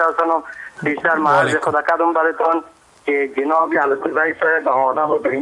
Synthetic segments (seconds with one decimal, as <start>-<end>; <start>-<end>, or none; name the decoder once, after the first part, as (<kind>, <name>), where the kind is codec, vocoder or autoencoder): 3.6-5.4 (codec, SNAC)